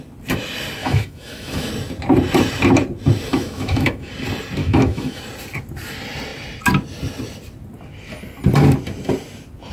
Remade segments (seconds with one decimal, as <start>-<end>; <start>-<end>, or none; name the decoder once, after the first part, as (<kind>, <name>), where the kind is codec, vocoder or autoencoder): 0.8-1.7 (autoencoder, DAC-VAE); 3.3-4.1; 4.6-5.2